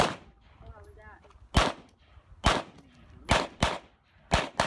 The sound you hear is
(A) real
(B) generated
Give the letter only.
A